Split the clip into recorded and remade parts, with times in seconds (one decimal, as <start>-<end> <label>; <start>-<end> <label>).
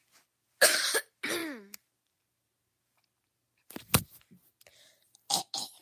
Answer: 0.0-5.8 recorded